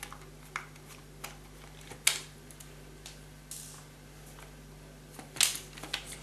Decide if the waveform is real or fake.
real